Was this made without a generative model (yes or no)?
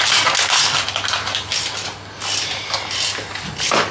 yes